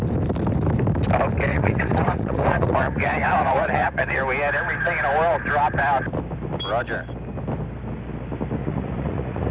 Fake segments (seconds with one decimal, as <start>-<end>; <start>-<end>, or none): 1.5-4.2; 8.6-9.5

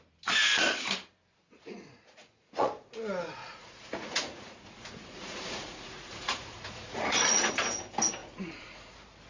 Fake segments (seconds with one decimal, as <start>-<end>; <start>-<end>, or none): 1.4-2.7; 3.4-7.5; 8.2-8.9

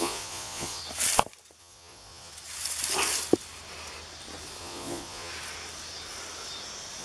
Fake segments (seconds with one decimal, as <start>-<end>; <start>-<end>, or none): 0.0-0.8; 1.6-2.3; 4.6-5.3

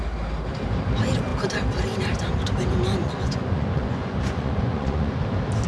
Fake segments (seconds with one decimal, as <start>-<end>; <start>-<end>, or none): 3.0-5.2

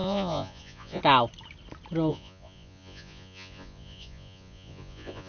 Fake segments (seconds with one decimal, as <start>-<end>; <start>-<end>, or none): 0.0-1.0; 2.1-5.3

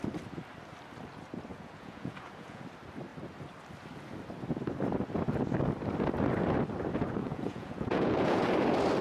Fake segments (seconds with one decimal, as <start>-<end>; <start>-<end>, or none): 1.5-2.6; 7.2-8.4